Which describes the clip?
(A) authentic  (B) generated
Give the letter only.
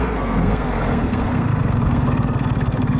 B